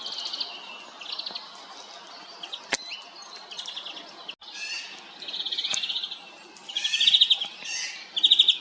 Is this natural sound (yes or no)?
yes